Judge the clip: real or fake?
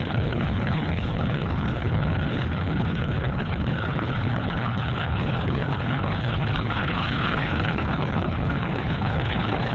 fake